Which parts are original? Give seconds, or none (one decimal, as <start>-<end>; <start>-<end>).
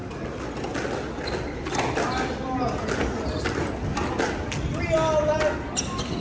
0.0-6.2